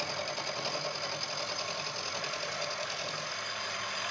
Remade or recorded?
recorded